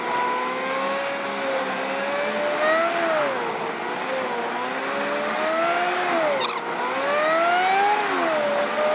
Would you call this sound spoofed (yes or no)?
no